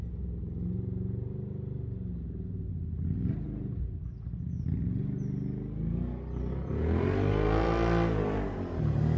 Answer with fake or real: real